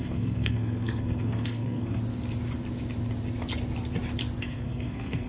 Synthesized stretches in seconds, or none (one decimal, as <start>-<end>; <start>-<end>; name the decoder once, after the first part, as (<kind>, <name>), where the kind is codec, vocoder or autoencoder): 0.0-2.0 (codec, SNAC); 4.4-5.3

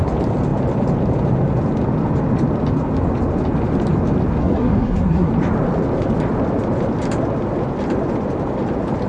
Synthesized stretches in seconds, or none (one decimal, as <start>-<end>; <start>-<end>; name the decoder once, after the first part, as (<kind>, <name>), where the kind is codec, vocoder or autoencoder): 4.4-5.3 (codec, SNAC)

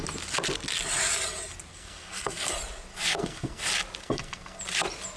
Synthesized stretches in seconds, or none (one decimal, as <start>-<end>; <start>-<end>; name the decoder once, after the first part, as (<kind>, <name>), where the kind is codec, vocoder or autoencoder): 1.7-2.5 (codec, SNAC); 2.9-3.6; 4.0-4.6